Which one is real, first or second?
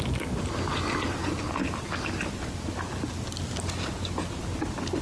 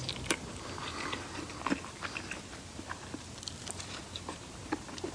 first